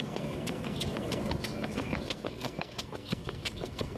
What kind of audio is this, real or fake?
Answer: fake